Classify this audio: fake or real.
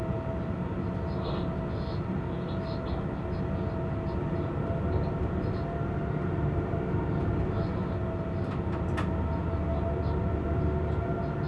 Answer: real